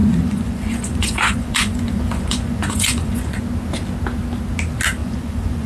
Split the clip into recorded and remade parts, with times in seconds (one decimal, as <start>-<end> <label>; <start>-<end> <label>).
0.0-3.4 remade; 3.4-5.0 recorded; 5.0-5.7 remade